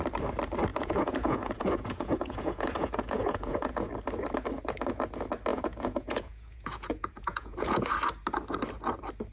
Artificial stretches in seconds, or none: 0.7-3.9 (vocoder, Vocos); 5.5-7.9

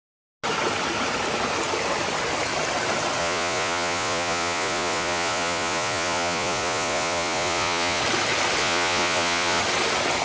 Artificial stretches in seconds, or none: 3.2-8.0 (vocoder, Vocos); 8.6-9.6

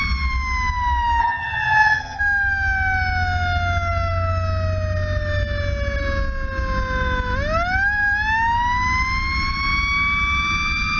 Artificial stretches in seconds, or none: 1.2-2.2 (vocoder, HiFi-GAN)

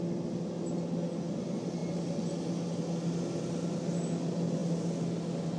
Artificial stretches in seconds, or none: none